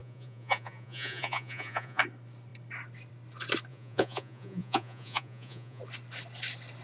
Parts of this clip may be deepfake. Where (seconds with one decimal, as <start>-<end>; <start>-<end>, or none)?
0.0-2.0; 3.7-5.8